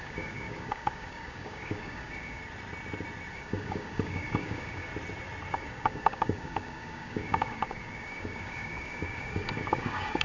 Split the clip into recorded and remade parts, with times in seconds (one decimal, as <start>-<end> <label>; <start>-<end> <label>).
0.0-2.4 remade; 2.4-3.3 recorded; 3.3-4.9 remade; 4.9-5.5 recorded; 5.5-10.2 remade